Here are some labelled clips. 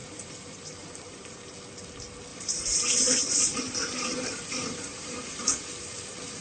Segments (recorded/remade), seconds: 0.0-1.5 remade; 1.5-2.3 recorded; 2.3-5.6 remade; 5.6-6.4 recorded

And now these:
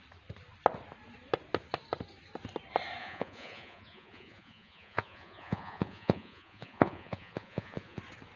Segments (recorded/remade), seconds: 0.0-3.0 recorded; 3.0-8.0 remade; 8.0-8.4 recorded

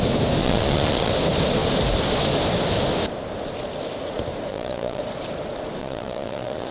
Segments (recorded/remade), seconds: 0.0-0.4 recorded; 0.4-1.1 remade; 1.1-4.5 recorded; 4.5-5.0 remade; 5.0-5.8 recorded; 5.8-6.7 remade

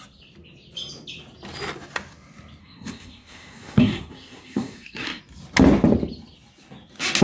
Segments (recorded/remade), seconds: 0.0-2.6 recorded; 2.6-5.2 remade; 5.2-7.2 recorded

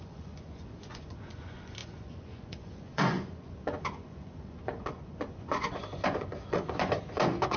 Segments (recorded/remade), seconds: 0.0-7.6 remade